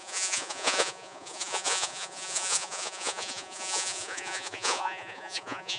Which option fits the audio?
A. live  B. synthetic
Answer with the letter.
B